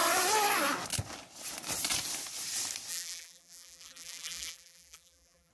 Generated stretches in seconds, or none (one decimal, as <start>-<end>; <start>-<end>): 2.9-5.5